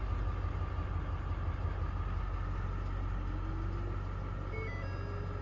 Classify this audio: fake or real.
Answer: real